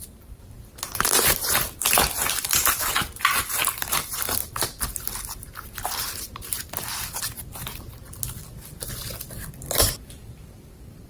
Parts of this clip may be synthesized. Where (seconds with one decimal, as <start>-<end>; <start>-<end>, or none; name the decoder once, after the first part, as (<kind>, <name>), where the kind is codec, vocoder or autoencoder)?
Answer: 0.0-2.6 (vocoder, BigVGAN v2); 3.2-4.4; 9.5-11.1